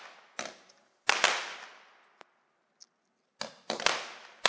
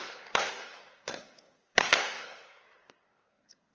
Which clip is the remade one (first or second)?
second